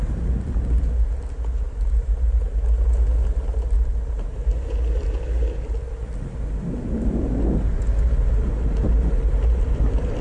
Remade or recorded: recorded